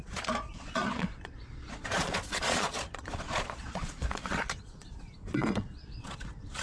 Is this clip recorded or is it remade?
remade